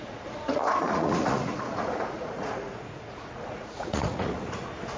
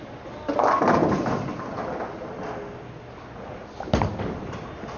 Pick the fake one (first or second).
first